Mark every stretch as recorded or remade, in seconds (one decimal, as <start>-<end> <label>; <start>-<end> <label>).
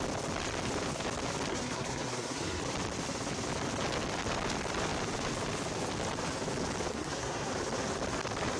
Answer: 0.0-1.5 recorded; 1.5-2.6 remade; 2.6-6.9 recorded; 6.9-7.5 remade; 7.5-8.6 recorded